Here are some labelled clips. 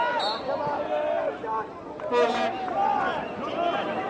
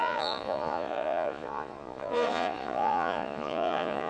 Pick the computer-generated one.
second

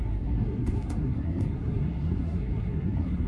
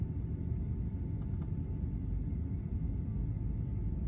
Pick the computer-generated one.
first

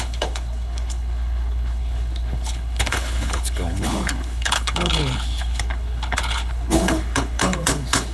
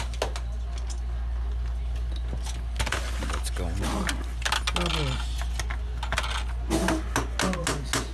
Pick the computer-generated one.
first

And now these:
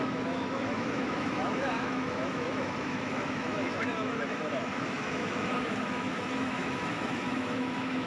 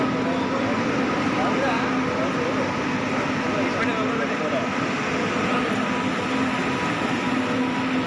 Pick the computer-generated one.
first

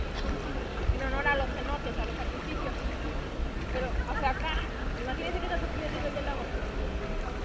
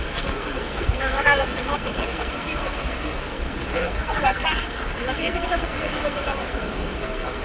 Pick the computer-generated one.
second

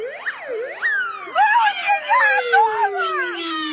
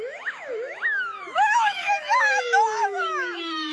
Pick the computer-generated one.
second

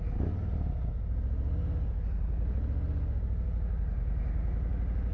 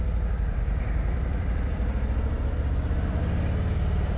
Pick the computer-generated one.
second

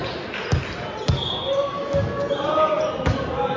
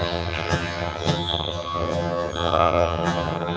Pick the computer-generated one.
second